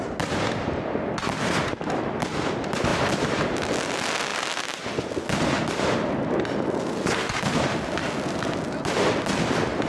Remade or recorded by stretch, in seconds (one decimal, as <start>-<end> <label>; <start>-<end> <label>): 0.0-9.9 recorded